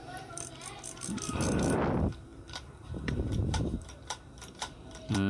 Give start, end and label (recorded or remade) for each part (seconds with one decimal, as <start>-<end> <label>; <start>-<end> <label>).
0.0-0.5 remade; 0.5-2.3 recorded; 2.3-5.3 remade